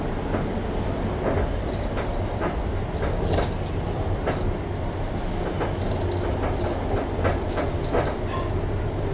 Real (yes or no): yes